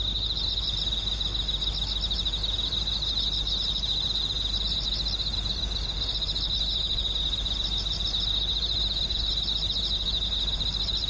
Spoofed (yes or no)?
no